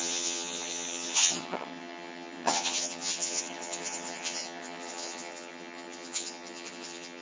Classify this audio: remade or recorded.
remade